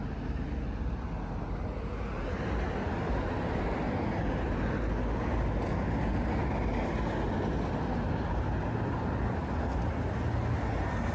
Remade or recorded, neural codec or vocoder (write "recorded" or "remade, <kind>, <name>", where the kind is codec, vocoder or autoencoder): recorded